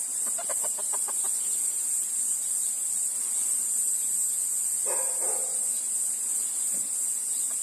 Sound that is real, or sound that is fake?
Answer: real